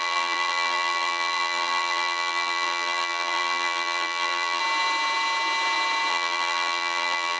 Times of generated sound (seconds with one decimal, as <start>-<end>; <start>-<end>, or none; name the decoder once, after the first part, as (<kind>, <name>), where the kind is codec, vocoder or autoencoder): 0.0-4.6 (vocoder, BigVGAN v2); 6.1-7.4

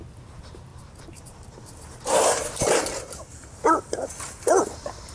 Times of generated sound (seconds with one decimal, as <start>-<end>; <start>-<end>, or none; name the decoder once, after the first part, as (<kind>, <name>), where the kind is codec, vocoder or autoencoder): none

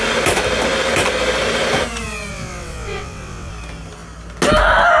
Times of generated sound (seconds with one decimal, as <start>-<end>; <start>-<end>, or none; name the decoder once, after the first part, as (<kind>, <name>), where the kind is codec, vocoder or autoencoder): 2.3-3.5 (vocoder, WaveNeXt)